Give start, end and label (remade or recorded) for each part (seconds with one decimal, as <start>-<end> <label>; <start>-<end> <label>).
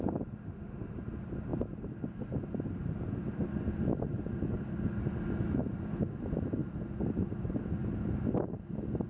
0.0-0.4 recorded; 0.4-1.0 remade; 1.0-9.1 recorded